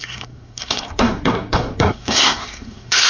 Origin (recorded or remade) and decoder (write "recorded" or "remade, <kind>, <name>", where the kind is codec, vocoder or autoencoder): remade, codec, SNAC